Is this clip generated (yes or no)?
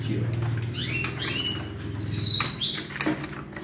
no